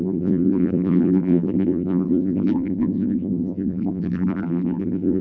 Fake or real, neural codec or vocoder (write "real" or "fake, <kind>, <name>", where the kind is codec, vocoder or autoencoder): fake, vocoder, BigVGAN v2